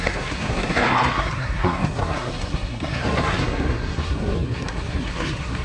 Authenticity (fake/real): fake